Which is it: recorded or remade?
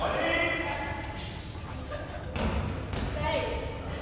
recorded